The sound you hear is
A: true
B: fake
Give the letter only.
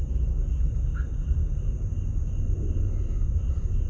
A